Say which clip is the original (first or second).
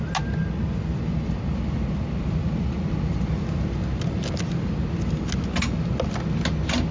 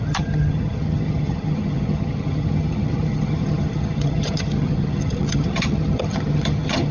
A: first